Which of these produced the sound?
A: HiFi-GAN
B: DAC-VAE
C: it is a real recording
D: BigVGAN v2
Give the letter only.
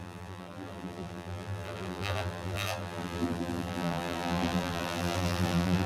D